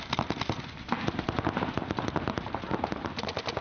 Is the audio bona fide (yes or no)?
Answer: yes